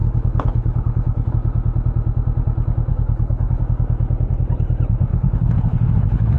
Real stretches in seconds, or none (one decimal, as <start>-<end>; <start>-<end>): 1.3-2.9; 3.6-5.1